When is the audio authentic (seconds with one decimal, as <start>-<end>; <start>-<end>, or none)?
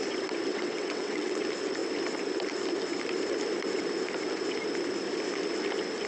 0.0-0.5; 1.4-6.1